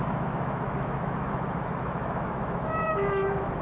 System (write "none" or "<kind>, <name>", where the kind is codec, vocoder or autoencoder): autoencoder, DAC-VAE